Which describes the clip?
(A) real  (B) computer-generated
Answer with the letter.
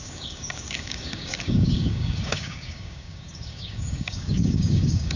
B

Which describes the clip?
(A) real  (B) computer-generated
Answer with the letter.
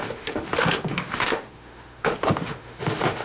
B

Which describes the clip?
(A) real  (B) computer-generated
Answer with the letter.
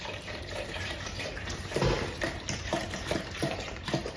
B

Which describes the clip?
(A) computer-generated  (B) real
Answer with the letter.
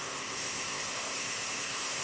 A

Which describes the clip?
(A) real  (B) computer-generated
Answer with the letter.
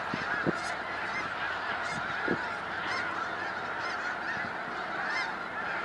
A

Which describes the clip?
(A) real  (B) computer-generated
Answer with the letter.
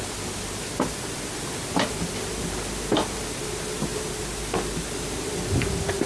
A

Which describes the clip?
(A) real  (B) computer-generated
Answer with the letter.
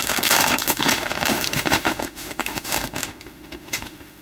B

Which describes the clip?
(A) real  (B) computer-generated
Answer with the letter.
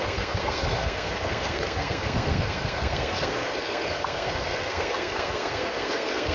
B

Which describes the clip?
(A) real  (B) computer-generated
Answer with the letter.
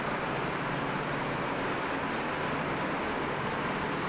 A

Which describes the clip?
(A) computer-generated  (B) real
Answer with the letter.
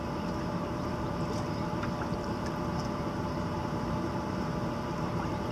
A